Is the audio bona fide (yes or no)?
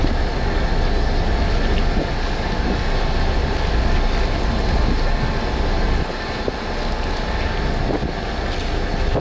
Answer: yes